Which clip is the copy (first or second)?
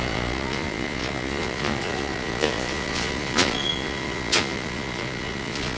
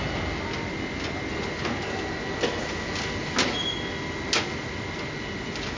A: first